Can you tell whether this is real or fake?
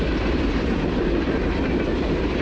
real